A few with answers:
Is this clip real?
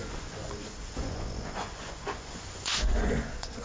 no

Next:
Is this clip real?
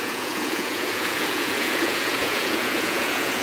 no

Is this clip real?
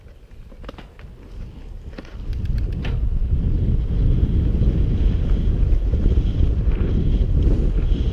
yes